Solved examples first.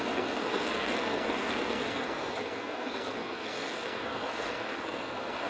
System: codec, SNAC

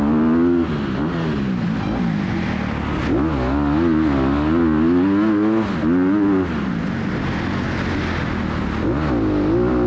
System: none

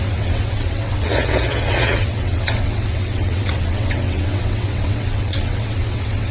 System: vocoder, WaveNeXt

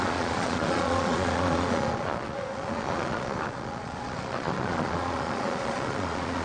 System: vocoder, Vocos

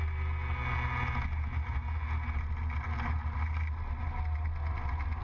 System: none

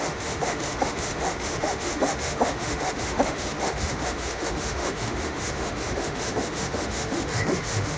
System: autoencoder, DAC-VAE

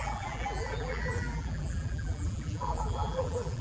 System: vocoder, BigVGAN v2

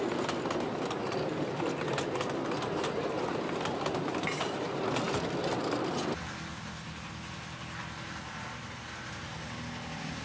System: none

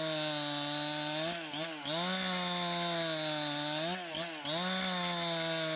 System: none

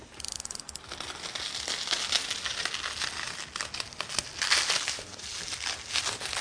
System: none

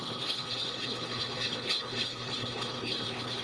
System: codec, HILCodec